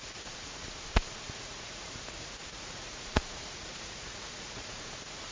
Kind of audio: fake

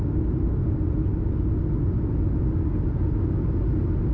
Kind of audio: real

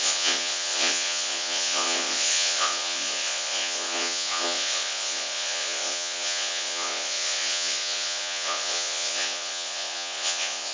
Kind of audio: fake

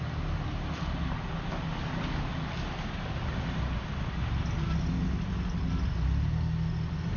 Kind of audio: real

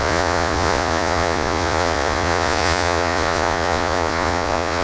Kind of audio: fake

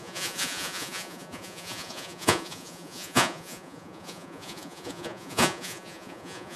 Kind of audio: fake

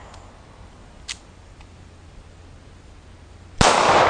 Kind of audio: real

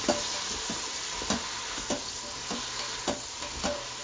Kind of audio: real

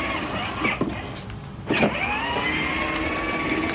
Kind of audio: real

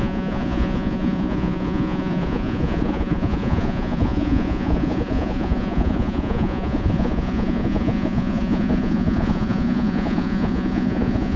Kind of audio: fake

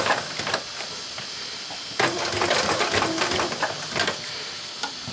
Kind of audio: real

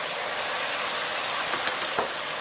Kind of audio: real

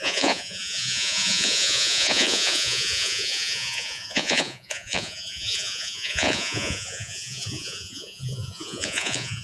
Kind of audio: fake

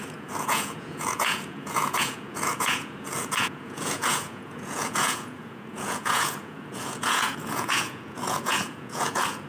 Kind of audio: fake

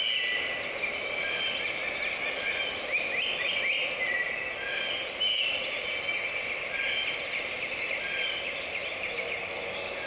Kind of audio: real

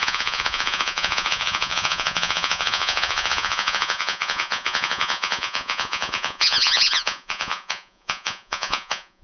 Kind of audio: fake